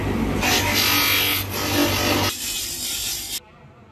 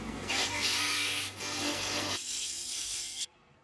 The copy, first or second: second